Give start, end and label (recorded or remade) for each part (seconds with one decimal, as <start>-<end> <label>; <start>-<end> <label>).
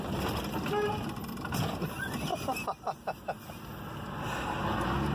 0.0-5.1 recorded